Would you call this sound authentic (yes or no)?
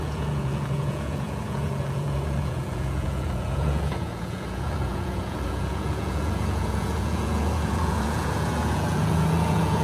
no